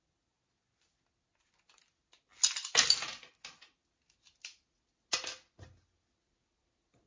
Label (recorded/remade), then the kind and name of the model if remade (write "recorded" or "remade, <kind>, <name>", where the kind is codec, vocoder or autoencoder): recorded